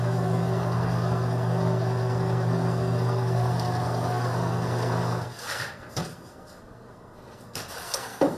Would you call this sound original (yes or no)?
no